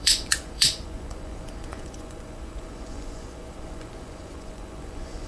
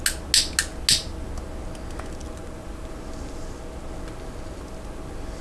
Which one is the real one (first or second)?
second